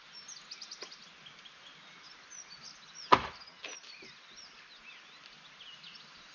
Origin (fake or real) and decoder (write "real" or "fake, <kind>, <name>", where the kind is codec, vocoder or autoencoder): real